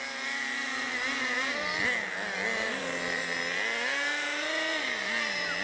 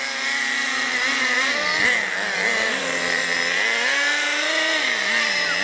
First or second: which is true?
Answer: first